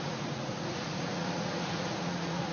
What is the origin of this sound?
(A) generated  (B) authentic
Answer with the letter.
A